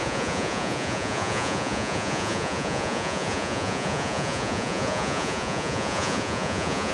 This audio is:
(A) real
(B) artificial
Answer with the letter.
B